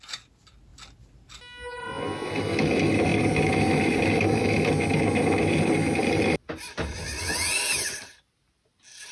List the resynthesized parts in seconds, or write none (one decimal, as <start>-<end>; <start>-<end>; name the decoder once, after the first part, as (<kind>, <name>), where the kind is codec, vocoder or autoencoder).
none